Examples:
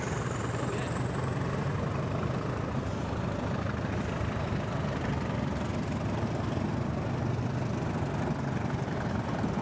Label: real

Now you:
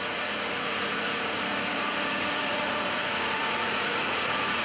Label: fake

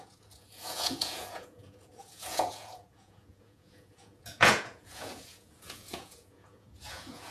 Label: fake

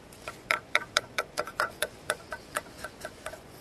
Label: fake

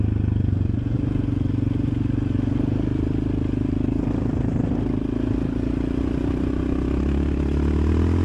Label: real